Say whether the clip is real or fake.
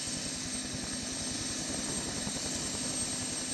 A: real